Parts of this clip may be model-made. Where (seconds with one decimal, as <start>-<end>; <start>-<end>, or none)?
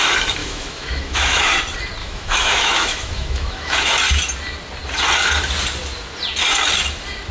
0.4-1.5; 2.0-3.9